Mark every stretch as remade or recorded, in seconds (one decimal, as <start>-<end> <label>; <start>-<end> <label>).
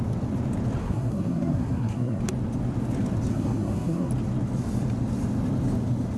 0.0-0.8 recorded; 0.8-2.2 remade; 2.2-3.3 recorded; 3.3-4.1 remade; 4.1-6.2 recorded